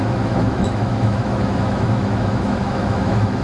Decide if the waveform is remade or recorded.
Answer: remade